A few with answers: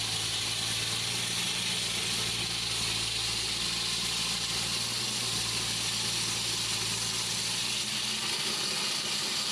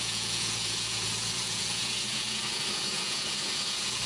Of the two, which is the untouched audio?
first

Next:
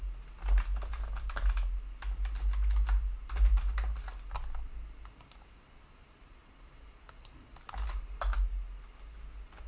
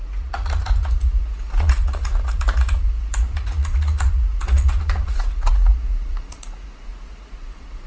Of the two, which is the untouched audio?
first